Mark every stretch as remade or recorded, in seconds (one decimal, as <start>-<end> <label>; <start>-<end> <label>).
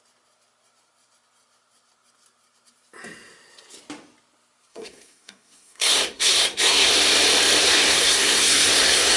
0.0-4.7 recorded; 4.7-6.9 remade; 6.9-7.6 recorded; 7.6-9.2 remade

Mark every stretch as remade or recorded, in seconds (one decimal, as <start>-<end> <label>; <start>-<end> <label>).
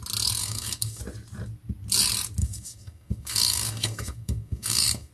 0.0-0.4 recorded; 0.4-1.0 remade; 1.0-2.4 recorded; 2.4-5.1 remade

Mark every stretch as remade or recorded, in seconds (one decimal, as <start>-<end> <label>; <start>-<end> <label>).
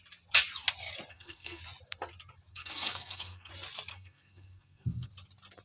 0.0-1.1 recorded; 1.1-1.6 remade; 1.6-2.5 recorded; 2.5-3.5 remade; 3.5-3.9 recorded; 3.9-5.1 remade; 5.1-5.6 recorded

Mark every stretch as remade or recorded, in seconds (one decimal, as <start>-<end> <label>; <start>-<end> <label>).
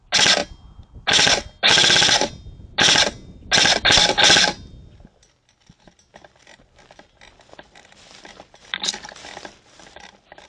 0.0-10.5 recorded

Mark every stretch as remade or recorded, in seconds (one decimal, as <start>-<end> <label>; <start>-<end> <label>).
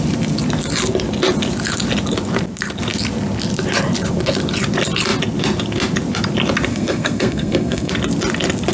0.0-6.7 recorded; 6.7-7.9 remade; 7.9-8.7 recorded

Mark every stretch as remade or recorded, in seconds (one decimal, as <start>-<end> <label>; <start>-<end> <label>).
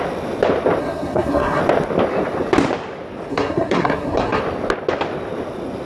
0.0-0.8 recorded; 0.8-1.6 remade; 1.6-3.3 recorded; 3.3-4.4 remade; 4.4-5.9 recorded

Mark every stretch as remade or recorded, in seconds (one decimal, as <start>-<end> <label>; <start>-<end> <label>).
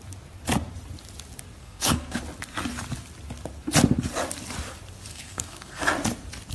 0.0-1.6 recorded; 1.6-2.2 remade; 2.2-5.1 recorded; 5.1-5.8 remade; 5.8-6.5 recorded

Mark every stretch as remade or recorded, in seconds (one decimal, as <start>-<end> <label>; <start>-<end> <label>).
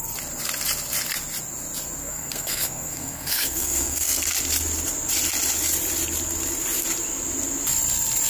0.0-2.0 recorded; 2.0-4.2 remade; 4.2-8.3 recorded